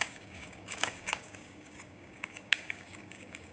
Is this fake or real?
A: fake